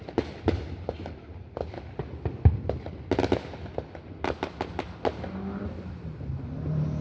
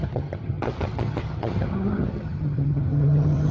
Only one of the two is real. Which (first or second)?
first